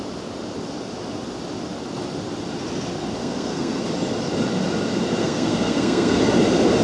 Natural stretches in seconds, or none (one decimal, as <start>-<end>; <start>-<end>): 0.0-3.2; 3.8-5.2; 6.2-6.8